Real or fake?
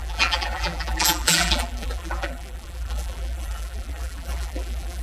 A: fake